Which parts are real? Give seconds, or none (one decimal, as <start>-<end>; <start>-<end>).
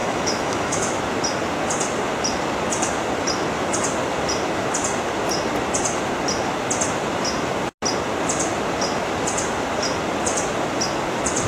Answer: 1.0-11.5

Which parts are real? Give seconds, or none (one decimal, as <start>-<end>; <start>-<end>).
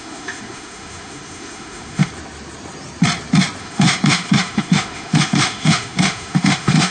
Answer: 2.1-3.6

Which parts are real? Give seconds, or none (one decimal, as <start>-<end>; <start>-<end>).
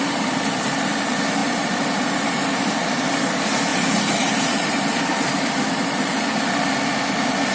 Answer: 0.0-1.4; 3.0-3.7; 6.2-7.5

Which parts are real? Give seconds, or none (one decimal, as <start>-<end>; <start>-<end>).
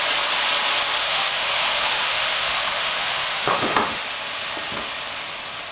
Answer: 0.0-1.0; 4.0-5.7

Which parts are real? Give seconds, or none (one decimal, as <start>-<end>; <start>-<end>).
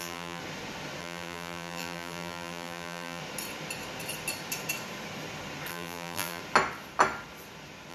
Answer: 0.4-1.0; 3.2-5.7; 6.4-7.9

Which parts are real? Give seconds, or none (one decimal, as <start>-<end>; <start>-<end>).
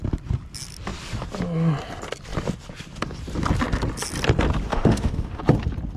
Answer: 0.0-4.7; 5.4-6.0